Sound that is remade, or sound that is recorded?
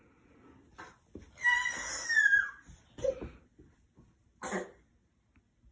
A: recorded